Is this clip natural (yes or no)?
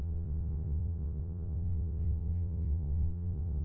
no